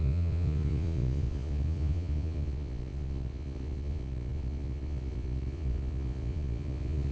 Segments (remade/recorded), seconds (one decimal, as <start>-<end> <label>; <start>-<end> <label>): 0.0-7.1 remade